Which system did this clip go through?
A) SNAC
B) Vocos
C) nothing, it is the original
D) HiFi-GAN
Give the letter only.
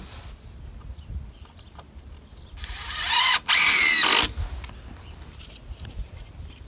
C